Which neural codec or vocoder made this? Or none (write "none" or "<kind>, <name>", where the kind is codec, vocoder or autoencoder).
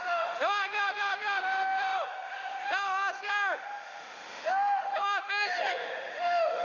autoencoder, DAC-VAE